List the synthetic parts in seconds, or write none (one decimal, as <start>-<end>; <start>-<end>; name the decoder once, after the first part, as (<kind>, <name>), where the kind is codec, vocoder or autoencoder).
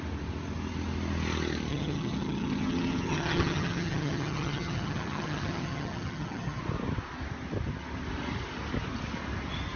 1.7-6.6 (vocoder, HiFi-GAN)